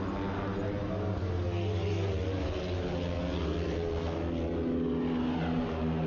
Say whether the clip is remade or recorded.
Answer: recorded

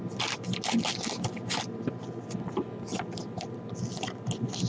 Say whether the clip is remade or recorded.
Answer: recorded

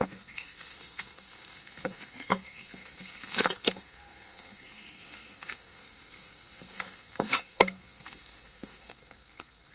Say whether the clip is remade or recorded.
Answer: remade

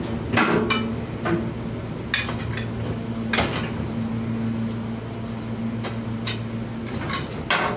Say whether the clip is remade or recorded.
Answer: recorded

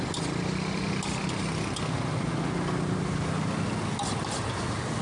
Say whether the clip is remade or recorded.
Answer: recorded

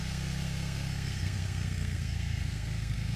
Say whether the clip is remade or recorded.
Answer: remade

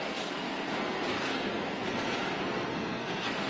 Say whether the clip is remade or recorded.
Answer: remade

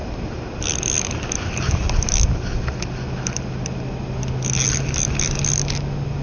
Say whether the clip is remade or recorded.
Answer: recorded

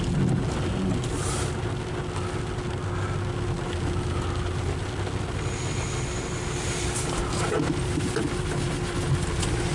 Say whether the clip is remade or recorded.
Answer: recorded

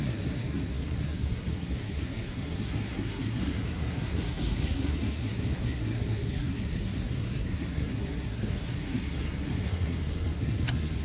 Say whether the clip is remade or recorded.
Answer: remade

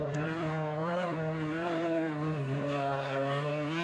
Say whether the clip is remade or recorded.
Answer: remade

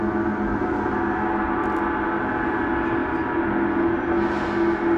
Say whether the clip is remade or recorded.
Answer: recorded